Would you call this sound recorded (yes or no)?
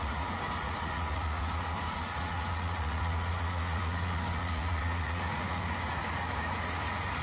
no